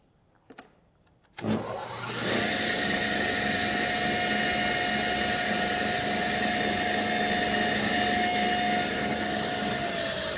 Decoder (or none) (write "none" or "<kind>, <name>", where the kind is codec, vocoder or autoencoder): none